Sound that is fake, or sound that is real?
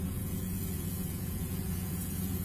fake